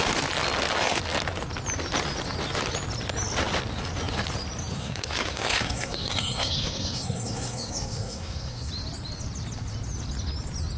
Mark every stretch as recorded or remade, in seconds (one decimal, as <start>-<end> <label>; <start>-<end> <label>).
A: 0.0-4.7 recorded; 4.7-8.7 remade; 8.7-10.8 recorded